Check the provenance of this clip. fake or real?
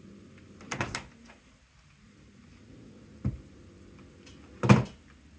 real